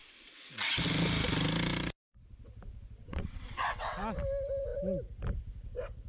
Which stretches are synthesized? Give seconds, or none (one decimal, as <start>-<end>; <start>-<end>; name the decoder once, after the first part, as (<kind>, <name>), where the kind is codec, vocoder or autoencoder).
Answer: 0.0-0.7 (vocoder, WaveNeXt); 3.0-4.2

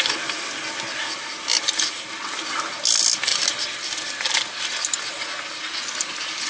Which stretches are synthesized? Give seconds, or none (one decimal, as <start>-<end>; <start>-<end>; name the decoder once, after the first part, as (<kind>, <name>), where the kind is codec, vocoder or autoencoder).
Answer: none

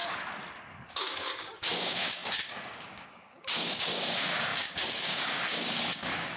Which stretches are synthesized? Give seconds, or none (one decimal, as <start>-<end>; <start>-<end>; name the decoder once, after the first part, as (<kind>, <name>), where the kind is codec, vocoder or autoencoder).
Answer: 0.9-6.4 (codec, DAC)

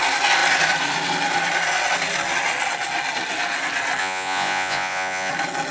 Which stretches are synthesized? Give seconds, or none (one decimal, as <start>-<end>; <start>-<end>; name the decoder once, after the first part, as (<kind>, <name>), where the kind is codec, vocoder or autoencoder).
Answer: 4.0-5.3 (vocoder, Vocos)

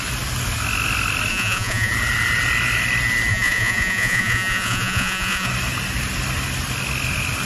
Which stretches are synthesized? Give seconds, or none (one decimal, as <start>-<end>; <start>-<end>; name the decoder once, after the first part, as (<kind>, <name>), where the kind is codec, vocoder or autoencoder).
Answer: 1.3-1.9 (vocoder, Vocos); 3.3-5.5

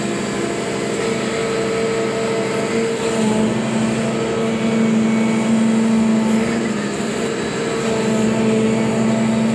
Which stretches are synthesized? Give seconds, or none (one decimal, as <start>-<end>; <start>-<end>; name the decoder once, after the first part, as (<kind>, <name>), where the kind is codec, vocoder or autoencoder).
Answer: none